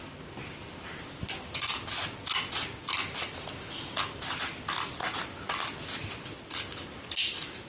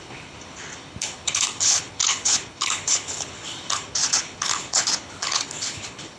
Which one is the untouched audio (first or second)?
first